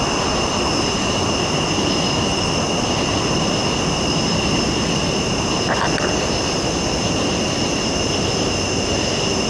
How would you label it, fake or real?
real